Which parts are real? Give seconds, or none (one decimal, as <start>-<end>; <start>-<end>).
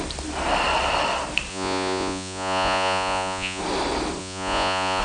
0.0-1.5; 3.6-4.2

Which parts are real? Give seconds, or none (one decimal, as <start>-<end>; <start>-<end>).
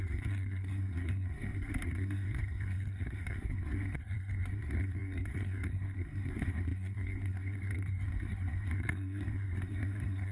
none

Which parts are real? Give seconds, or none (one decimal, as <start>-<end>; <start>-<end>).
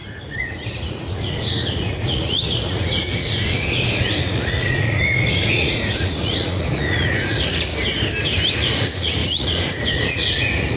7.7-8.5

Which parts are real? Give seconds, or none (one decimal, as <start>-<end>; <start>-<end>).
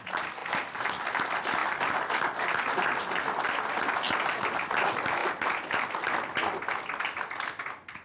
0.0-8.0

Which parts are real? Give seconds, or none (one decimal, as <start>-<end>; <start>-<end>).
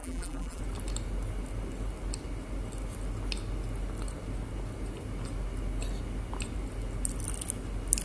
0.6-8.0